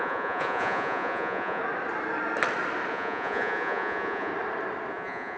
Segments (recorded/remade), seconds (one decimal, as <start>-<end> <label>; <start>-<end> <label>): 0.0-1.6 remade; 1.6-2.9 recorded; 2.9-4.3 remade; 4.3-4.9 recorded; 4.9-5.4 remade